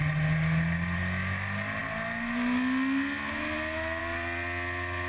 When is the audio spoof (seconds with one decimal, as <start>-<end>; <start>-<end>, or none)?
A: none